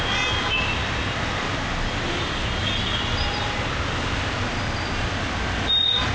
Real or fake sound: real